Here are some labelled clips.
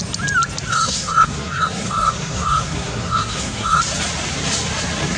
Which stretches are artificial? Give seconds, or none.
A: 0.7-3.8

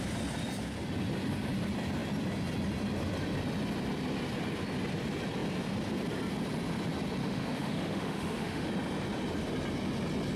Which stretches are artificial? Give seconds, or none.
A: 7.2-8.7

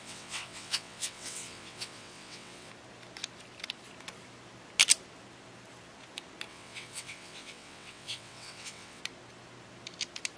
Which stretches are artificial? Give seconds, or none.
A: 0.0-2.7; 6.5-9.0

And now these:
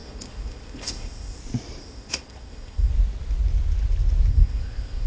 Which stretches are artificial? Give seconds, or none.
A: 0.0-1.4; 1.8-2.9; 4.3-5.1